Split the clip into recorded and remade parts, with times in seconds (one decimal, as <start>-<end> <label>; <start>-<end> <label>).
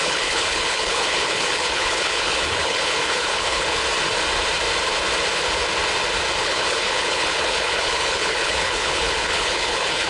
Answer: 0.0-3.8 remade; 3.8-6.4 recorded; 6.4-10.1 remade